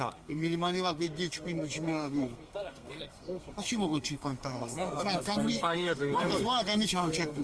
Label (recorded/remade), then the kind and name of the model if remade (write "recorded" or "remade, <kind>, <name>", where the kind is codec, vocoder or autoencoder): remade, codec, SNAC